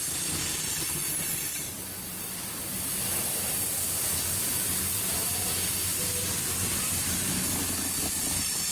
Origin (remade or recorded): recorded